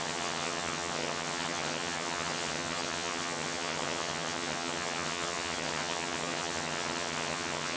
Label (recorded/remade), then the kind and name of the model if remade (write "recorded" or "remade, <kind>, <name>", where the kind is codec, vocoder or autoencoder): remade, vocoder, HiFi-GAN